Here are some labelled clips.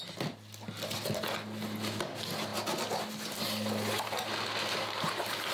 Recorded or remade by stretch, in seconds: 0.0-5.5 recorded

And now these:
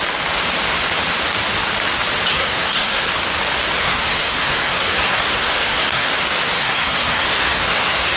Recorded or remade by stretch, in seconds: 0.0-2.3 recorded; 2.3-3.1 remade; 3.1-3.8 recorded; 3.8-6.1 remade; 6.1-6.6 recorded; 6.6-8.2 remade